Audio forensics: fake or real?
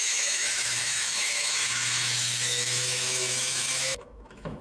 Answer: fake